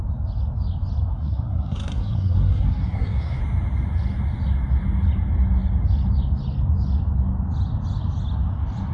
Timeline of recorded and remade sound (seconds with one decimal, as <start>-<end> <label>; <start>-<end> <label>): 0.0-1.1 recorded; 1.1-3.4 remade; 3.4-8.9 recorded